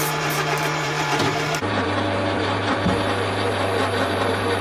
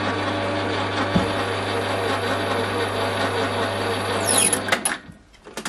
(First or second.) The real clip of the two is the second